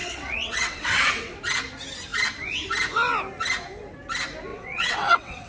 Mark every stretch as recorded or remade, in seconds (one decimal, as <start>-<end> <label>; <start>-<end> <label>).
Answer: 0.0-1.4 remade; 1.4-4.5 recorded; 4.5-5.5 remade